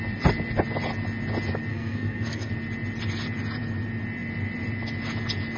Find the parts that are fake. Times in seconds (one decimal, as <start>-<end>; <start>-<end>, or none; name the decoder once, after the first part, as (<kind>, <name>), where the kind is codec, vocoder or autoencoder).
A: 1.7-2.5 (codec, SNAC)